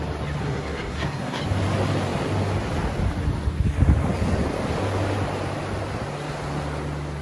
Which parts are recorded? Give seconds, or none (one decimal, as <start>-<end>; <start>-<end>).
0.0-0.4; 1.4-7.2